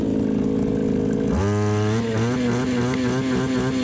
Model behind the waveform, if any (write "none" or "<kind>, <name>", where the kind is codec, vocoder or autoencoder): none